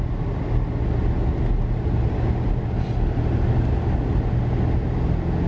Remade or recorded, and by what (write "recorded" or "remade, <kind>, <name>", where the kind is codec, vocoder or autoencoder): recorded